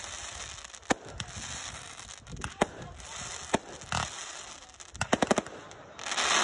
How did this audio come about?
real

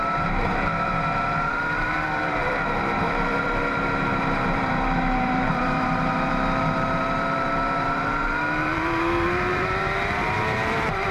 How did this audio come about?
fake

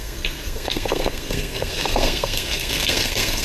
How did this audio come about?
fake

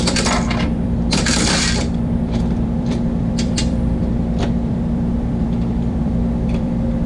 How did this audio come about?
fake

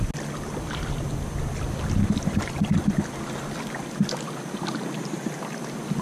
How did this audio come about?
real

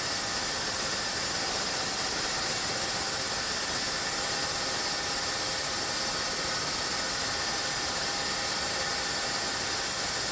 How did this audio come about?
real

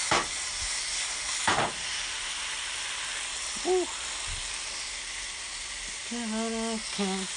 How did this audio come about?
real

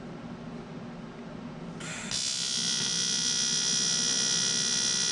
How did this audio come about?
real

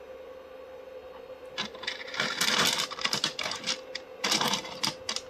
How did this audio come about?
real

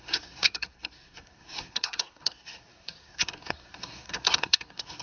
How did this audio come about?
fake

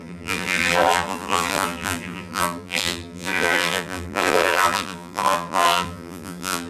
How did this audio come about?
fake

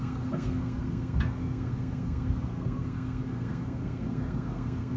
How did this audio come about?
fake